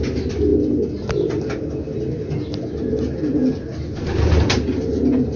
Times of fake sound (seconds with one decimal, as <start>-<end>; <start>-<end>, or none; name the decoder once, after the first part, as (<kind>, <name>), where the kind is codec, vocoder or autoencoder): none